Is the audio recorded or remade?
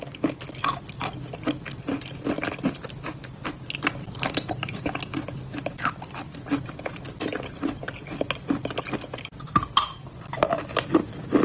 recorded